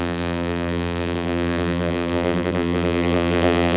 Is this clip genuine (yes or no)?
no